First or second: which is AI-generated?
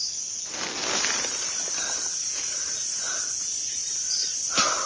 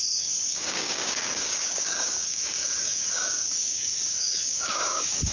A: second